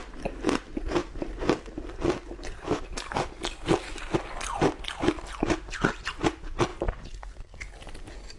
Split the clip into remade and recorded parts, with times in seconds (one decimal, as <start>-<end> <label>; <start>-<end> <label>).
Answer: 0.0-6.7 remade; 6.7-8.4 recorded